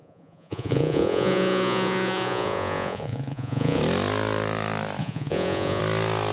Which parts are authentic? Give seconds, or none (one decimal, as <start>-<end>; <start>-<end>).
3.8-5.0; 5.8-6.3